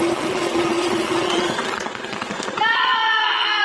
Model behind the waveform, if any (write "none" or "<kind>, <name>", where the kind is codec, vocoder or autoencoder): vocoder, Vocos